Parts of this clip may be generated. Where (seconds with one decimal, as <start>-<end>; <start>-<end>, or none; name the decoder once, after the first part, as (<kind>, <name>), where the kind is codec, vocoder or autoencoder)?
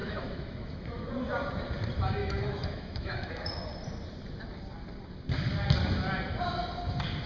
0.0-1.0 (autoencoder, DAC-VAE); 2.2-3.3